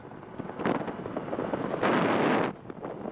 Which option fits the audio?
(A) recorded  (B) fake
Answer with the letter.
A